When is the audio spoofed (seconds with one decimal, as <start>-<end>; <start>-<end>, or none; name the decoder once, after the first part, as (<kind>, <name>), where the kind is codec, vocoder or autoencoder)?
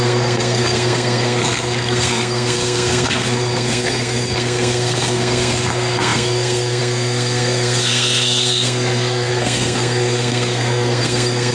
0.0-11.5 (codec, SNAC)